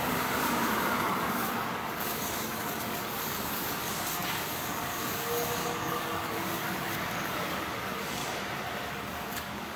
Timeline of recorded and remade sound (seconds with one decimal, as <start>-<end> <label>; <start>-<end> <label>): 0.0-8.2 remade; 8.2-8.9 recorded; 8.9-9.8 remade

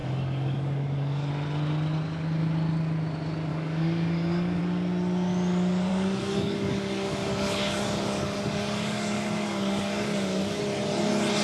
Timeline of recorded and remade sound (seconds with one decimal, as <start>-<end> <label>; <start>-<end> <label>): 0.0-1.3 remade; 1.3-3.5 recorded; 3.5-4.6 remade; 4.6-5.9 recorded; 5.9-10.6 remade; 10.6-11.4 recorded

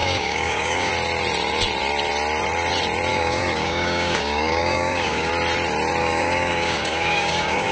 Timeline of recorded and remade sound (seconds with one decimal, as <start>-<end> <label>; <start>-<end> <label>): 0.0-0.9 remade; 0.9-3.1 recorded; 3.1-5.3 remade; 5.3-6.0 recorded; 6.0-7.7 remade

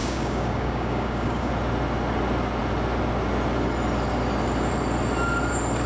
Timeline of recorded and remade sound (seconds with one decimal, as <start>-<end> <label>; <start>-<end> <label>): 0.0-1.5 remade; 1.5-5.9 recorded

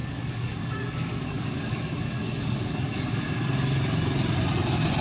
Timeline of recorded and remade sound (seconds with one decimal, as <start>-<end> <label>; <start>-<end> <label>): 0.0-3.0 remade; 3.0-5.0 recorded

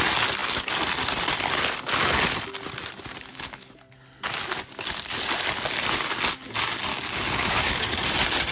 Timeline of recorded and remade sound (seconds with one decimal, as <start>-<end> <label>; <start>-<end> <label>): 0.0-3.3 recorded; 3.3-3.8 remade; 3.8-6.9 recorded; 6.9-8.0 remade; 8.0-8.5 recorded

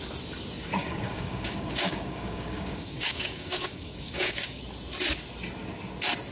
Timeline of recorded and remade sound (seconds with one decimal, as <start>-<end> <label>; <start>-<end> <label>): 0.0-0.8 recorded; 0.8-4.6 remade; 4.6-6.3 recorded